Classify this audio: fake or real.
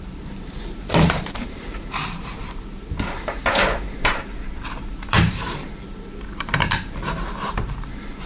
fake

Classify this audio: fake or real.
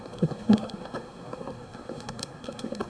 fake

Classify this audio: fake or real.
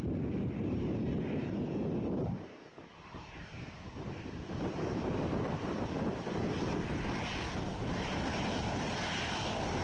real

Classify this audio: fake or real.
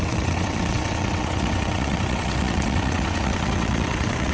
fake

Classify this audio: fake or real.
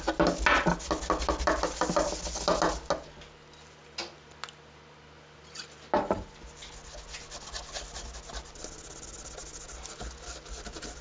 real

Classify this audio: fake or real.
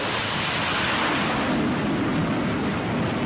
real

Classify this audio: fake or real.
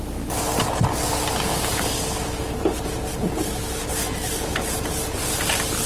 real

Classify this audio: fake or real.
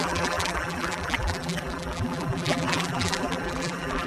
fake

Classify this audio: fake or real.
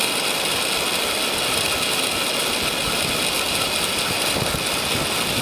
real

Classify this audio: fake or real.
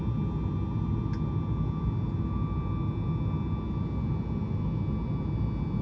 real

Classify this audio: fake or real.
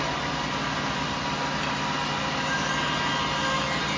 real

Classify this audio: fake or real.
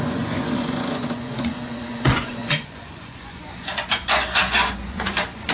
fake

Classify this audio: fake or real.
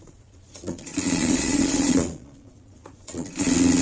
fake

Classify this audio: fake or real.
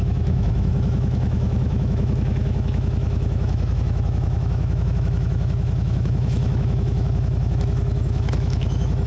fake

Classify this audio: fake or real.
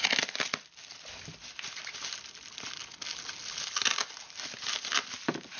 real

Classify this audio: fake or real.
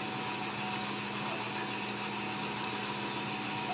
real